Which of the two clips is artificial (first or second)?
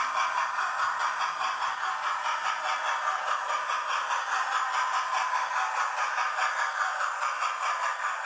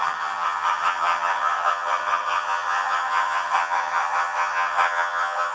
second